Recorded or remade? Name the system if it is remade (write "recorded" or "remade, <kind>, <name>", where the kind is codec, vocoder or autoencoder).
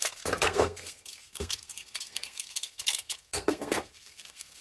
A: remade, codec, SNAC